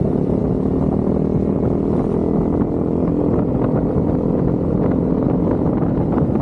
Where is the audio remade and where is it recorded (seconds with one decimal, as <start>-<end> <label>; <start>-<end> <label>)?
0.0-6.4 recorded